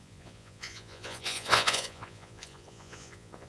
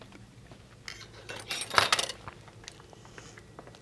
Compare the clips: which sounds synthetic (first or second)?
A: first